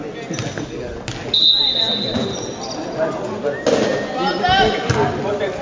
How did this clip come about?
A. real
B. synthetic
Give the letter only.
A